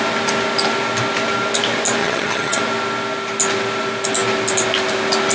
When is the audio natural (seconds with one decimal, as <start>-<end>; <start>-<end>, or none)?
0.0-2.0; 2.6-5.3